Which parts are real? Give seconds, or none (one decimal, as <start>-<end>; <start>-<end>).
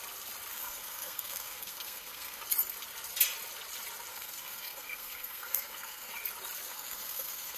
0.0-0.5; 2.4-4.1; 6.1-6.7